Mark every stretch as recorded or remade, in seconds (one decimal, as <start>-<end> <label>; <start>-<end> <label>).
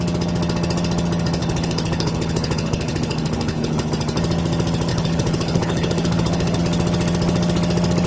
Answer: 0.0-1.4 recorded; 1.4-3.9 remade; 3.9-4.9 recorded; 4.9-6.6 remade; 6.6-8.1 recorded